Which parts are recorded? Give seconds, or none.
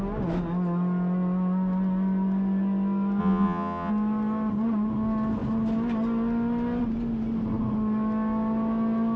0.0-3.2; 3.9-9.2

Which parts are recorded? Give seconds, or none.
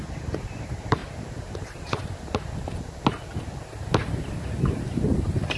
1.0-4.4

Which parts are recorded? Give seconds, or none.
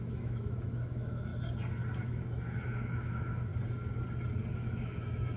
1.3-2.0; 3.5-4.5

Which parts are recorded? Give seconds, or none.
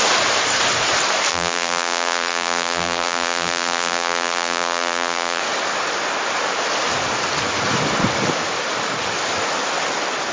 0.0-1.3; 5.4-10.3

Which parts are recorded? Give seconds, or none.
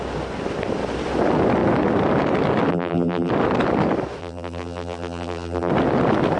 0.0-2.7; 3.3-4.2; 5.7-6.4